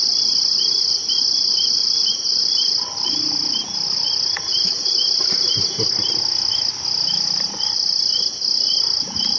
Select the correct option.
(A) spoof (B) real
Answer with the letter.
B